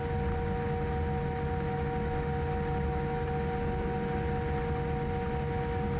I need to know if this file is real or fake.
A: real